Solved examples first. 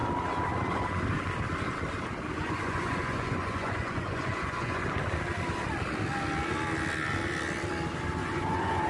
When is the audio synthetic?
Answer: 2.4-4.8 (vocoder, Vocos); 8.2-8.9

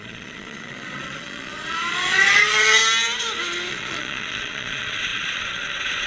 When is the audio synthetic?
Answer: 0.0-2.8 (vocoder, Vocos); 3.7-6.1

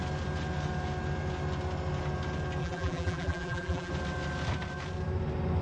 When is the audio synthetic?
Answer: 2.6-3.9 (vocoder, BigVGAN v2)

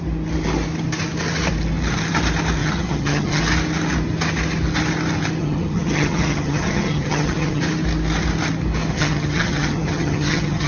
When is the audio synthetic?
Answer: 2.6-3.4 (vocoder, HiFi-GAN); 5.4-7.6; 8.9-10.7

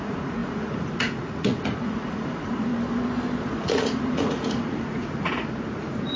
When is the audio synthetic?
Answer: 0.0-2.7 (vocoder, Vocos); 3.4-6.2